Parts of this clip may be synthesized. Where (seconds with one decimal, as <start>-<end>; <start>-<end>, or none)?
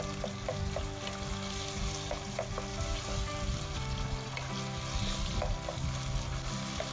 none